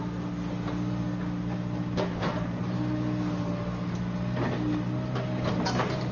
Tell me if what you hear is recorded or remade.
recorded